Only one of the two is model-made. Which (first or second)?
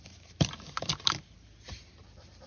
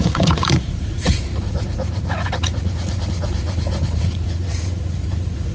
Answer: second